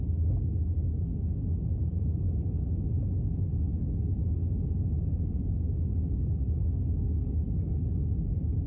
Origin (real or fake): real